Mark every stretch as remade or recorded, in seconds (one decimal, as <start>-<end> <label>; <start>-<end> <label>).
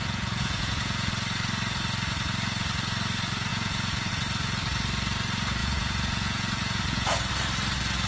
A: 0.0-1.1 remade; 1.1-3.5 recorded; 3.5-4.1 remade; 4.1-5.6 recorded; 5.6-7.3 remade; 7.3-8.1 recorded